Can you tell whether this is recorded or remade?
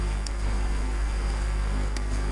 remade